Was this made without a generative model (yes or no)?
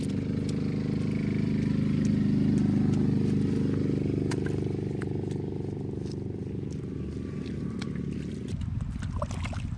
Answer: yes